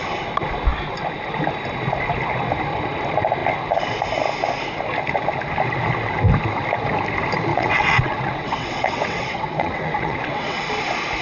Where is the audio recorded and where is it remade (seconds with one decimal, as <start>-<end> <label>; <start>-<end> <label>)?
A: 0.0-7.5 recorded; 7.5-10.6 remade; 10.6-11.2 recorded